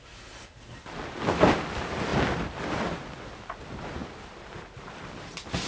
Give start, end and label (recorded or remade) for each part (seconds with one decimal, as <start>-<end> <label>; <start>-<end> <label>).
0.0-5.7 recorded